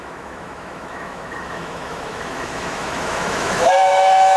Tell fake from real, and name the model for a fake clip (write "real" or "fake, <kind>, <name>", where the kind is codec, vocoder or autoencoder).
fake, autoencoder, DAC-VAE